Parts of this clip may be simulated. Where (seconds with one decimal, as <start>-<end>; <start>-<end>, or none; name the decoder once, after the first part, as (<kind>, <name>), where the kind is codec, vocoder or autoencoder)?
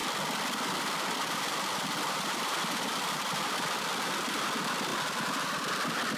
0.0-6.2 (vocoder, BigVGAN v2)